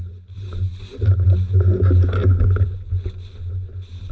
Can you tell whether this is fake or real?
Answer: real